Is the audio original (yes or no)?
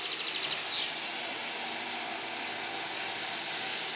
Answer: yes